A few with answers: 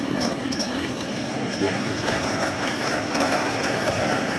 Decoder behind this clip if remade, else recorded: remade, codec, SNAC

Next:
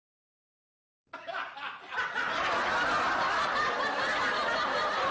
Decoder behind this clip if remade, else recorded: recorded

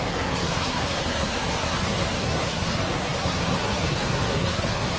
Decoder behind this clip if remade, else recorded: remade, codec, SNAC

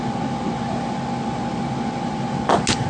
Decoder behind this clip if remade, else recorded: recorded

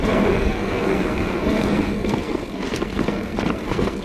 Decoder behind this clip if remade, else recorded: remade, codec, SNAC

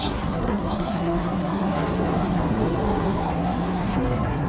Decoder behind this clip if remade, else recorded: remade, codec, SNAC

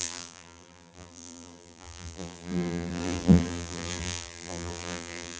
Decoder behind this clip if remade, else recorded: remade, vocoder, BigVGAN v2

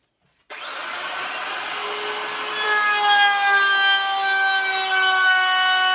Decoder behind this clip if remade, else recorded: recorded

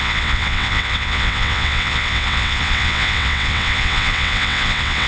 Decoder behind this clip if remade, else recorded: remade, vocoder, WaveNeXt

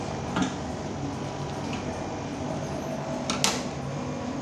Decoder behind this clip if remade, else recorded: recorded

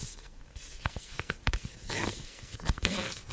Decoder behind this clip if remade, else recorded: remade, codec, SNAC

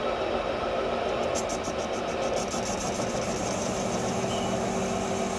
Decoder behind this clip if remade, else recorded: recorded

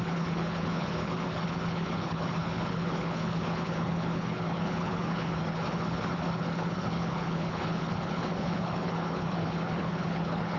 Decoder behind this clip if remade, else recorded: remade, codec, HILCodec